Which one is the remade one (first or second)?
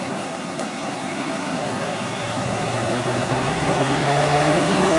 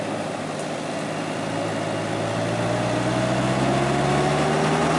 first